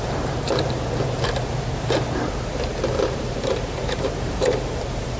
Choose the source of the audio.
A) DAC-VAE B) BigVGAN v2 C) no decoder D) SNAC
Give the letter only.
B